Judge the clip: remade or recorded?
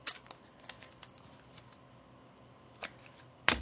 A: recorded